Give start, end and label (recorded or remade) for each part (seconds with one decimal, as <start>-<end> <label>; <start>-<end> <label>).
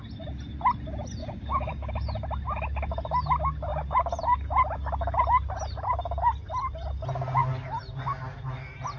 0.0-1.2 recorded; 1.2-1.9 remade; 1.9-9.0 recorded